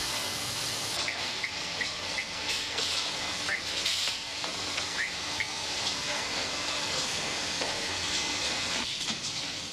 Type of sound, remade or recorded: remade